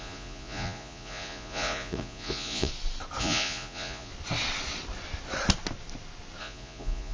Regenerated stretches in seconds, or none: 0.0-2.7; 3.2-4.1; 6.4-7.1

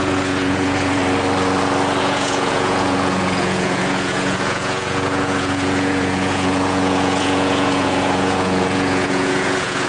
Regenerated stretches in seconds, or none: 0.0-1.0; 2.0-9.9

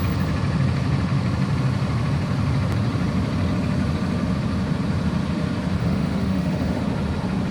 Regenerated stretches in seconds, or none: 5.8-6.8

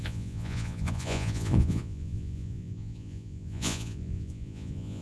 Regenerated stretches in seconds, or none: 0.0-5.0

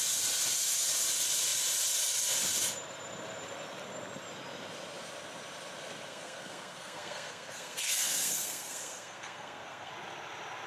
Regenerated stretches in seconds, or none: 6.1-9.9

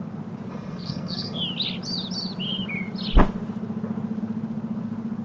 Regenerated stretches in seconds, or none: 0.5-1.4

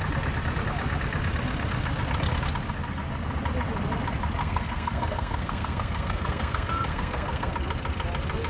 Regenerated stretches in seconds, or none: 4.4-7.5